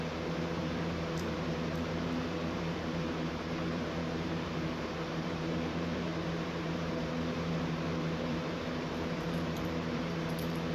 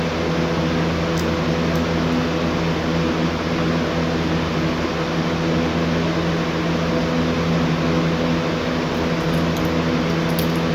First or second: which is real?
second